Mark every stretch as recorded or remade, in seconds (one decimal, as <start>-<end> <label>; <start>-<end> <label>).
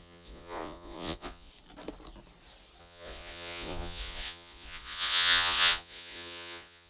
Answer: 0.0-1.5 remade; 1.5-2.8 recorded; 2.8-6.9 remade